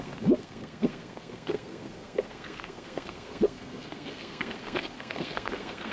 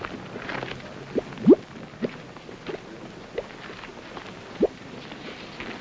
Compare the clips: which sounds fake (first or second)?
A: first